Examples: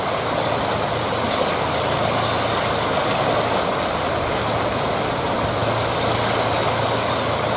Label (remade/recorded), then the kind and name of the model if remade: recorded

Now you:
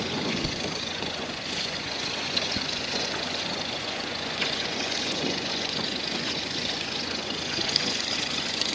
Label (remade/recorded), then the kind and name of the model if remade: remade, vocoder, Vocos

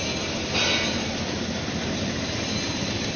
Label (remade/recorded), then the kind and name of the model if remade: recorded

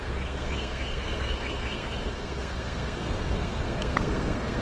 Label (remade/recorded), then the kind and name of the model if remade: remade, codec, SNAC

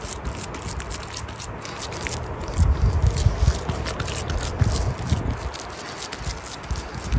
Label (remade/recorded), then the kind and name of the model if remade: recorded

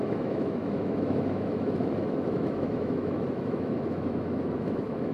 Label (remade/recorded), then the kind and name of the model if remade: remade, autoencoder, DAC-VAE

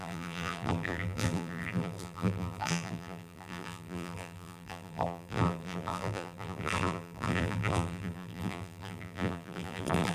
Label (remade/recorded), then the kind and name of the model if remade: remade, vocoder, BigVGAN v2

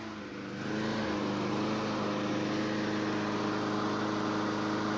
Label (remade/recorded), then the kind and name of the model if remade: recorded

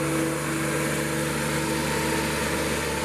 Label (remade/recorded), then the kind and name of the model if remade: recorded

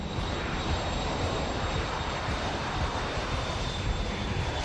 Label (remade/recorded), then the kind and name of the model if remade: remade, vocoder, BigVGAN v2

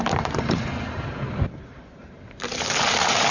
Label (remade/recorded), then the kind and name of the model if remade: remade, vocoder, BigVGAN v2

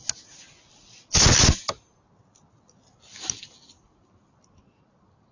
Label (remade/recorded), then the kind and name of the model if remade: recorded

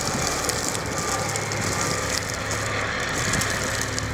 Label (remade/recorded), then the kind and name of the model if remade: recorded